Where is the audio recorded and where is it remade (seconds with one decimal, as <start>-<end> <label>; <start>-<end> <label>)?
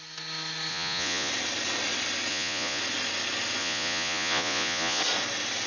0.0-0.7 recorded; 0.7-1.3 remade; 1.3-2.3 recorded; 2.3-2.8 remade; 2.8-3.6 recorded; 3.6-5.0 remade; 5.0-5.7 recorded